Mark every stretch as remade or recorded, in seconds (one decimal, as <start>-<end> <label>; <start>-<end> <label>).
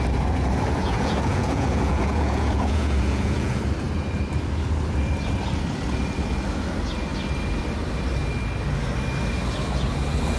0.0-0.8 recorded; 0.8-3.6 remade; 3.6-10.4 recorded